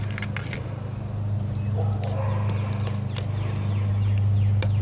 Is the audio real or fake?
real